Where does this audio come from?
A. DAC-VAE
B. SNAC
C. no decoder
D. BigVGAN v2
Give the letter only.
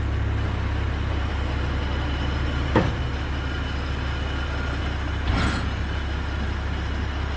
C